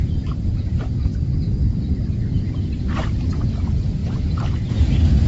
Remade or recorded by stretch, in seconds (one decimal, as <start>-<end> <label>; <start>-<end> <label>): 0.0-1.1 remade; 1.1-2.8 recorded; 2.8-4.0 remade; 4.0-4.7 recorded; 4.7-5.3 remade